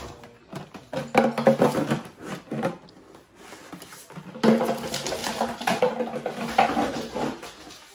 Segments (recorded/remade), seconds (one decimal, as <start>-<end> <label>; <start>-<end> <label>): 0.0-5.2 recorded; 5.2-5.8 remade; 5.8-7.9 recorded